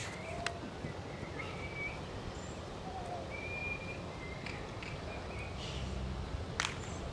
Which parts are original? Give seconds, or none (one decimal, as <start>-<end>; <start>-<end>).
0.0-7.1